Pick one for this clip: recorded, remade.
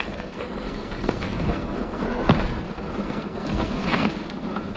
remade